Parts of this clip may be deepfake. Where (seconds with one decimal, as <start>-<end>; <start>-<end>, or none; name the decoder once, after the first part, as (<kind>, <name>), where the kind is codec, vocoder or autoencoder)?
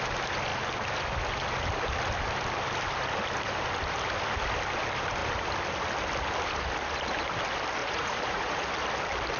7.8-8.6 (vocoder, Vocos)